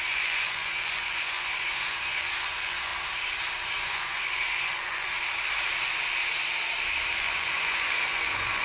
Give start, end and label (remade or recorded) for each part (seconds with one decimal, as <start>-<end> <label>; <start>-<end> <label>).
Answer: 0.0-2.9 remade; 2.9-3.7 recorded; 3.7-5.1 remade; 5.1-7.1 recorded; 7.1-8.6 remade